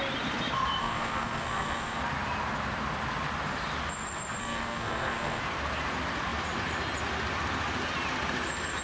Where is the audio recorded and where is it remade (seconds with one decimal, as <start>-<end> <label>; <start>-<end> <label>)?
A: 0.0-0.8 recorded; 0.8-2.0 remade; 2.0-4.4 recorded; 4.4-5.4 remade; 5.4-8.8 recorded